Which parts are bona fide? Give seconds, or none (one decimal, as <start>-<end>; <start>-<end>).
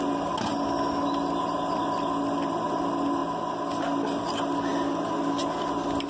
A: 0.0-6.1